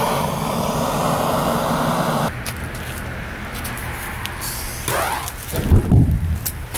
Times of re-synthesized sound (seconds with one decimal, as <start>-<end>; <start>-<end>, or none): none